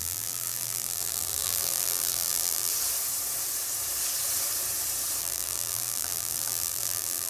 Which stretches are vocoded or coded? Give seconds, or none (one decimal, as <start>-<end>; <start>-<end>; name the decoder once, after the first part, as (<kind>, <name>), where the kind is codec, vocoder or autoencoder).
0.0-2.7 (vocoder, BigVGAN v2); 5.2-7.3